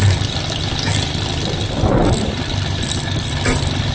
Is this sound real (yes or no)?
yes